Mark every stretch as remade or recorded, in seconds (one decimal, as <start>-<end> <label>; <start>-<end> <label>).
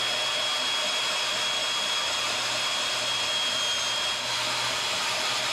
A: 0.0-5.5 recorded